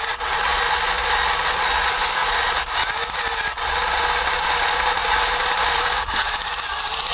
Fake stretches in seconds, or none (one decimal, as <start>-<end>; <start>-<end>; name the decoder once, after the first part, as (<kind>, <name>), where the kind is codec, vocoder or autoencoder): none